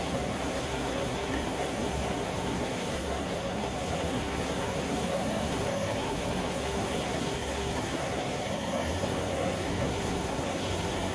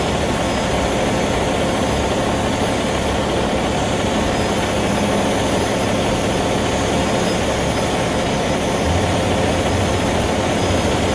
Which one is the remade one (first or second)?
first